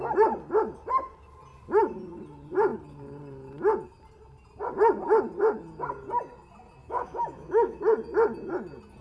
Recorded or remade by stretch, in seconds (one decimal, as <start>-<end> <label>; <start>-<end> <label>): 0.0-6.8 recorded; 6.8-7.8 remade; 7.8-9.0 recorded